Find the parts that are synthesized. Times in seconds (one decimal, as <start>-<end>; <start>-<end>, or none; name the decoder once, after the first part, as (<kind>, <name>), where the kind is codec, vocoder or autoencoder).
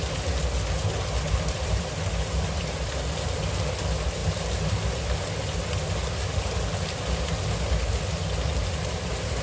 none